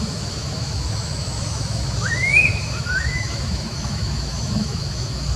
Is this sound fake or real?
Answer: fake